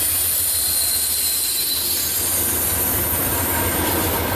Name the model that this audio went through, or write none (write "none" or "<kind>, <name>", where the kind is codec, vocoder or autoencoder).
none